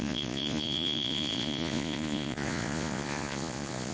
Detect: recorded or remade remade